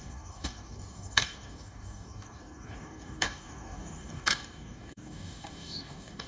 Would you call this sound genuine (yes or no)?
no